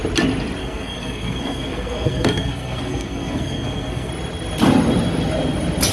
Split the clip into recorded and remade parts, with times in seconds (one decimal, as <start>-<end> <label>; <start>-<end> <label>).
0.0-0.6 recorded; 0.6-4.1 remade; 4.1-5.9 recorded